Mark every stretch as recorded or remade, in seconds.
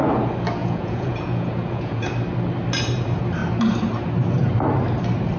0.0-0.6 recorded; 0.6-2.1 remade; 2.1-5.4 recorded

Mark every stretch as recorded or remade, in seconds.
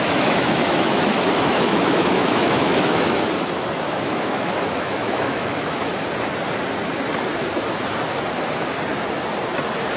0.0-5.9 remade; 5.9-10.0 recorded